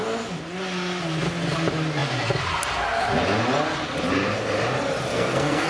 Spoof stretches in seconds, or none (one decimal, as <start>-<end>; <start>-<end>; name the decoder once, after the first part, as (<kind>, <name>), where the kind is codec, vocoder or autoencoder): 5.1-5.7 (codec, SNAC)